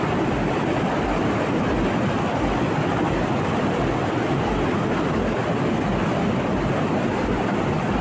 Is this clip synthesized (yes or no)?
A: no